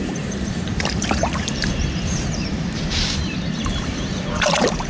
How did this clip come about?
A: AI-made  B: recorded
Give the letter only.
A